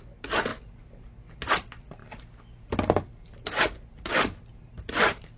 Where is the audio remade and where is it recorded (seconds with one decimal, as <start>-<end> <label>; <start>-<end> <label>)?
0.0-5.4 recorded